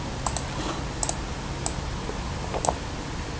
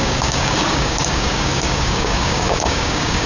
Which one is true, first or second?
first